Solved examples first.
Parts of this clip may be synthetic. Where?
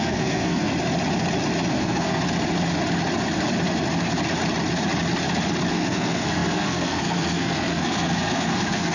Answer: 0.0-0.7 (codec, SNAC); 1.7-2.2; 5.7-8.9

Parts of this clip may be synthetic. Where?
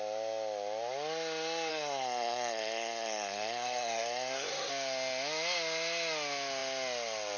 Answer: 1.7-4.7 (codec, SNAC)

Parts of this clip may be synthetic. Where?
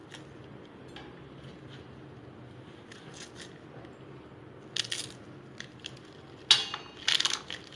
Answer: none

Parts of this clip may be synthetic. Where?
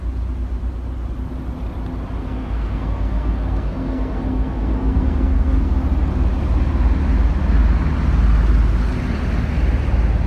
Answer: 2.2-5.8 (codec, SNAC)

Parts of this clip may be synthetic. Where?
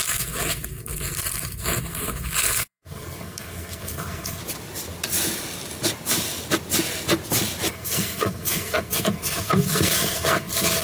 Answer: 0.0-4.4 (codec, SNAC); 7.7-10.8